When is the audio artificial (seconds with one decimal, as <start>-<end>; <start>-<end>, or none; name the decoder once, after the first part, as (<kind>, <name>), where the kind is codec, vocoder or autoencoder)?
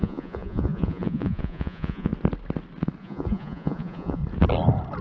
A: 0.0-2.1 (vocoder, Vocos); 3.0-4.2